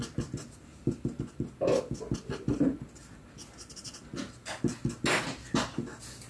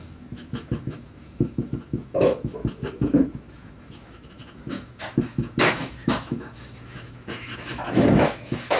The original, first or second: first